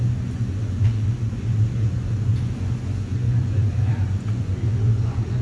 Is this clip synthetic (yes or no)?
yes